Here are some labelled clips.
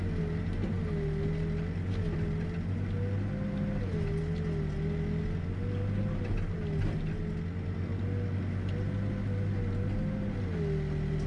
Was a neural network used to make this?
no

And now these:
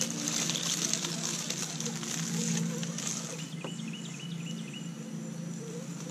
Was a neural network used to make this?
no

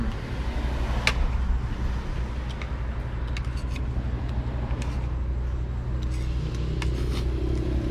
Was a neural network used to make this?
no